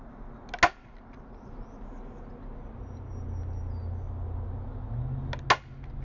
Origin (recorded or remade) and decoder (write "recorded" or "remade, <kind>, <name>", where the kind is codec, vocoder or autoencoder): recorded